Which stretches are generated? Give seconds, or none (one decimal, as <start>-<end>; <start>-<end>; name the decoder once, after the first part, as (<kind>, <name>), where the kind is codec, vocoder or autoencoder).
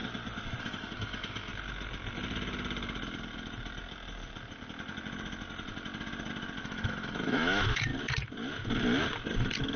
0.6-1.5 (autoencoder, DAC-VAE); 6.6-7.9